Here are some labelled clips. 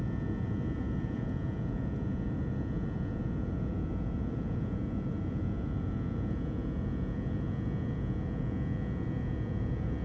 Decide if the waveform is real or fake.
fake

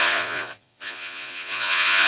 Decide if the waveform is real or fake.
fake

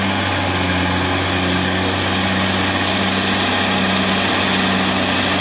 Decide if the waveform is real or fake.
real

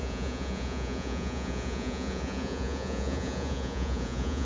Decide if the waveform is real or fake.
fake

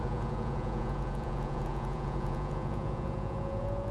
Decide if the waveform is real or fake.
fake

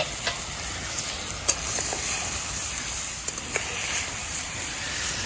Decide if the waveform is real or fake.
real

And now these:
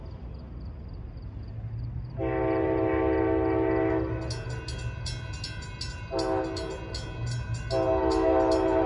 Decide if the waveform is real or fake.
real